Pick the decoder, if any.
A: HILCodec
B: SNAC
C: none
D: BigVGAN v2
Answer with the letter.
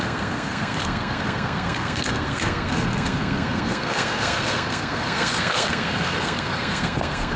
B